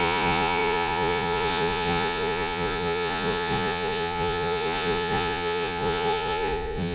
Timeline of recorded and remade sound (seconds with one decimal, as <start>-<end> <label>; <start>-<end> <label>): 0.0-6.9 remade

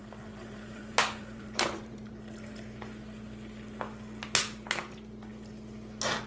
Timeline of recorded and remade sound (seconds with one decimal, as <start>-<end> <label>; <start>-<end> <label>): 0.0-2.1 remade; 2.1-6.3 recorded